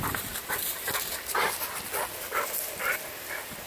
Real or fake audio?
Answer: real